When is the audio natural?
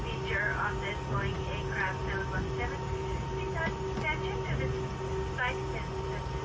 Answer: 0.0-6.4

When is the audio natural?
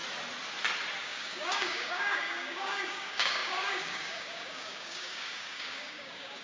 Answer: 0.0-1.0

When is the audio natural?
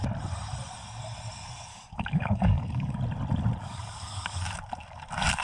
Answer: 0.0-1.7; 3.0-3.6; 4.4-5.4